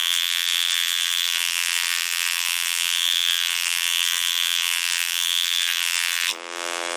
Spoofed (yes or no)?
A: yes